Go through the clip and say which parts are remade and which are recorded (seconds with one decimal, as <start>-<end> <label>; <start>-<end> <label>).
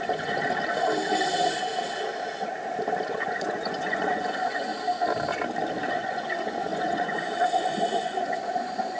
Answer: 0.0-0.4 remade; 0.4-3.1 recorded; 3.1-4.7 remade; 4.7-5.9 recorded; 5.9-9.0 remade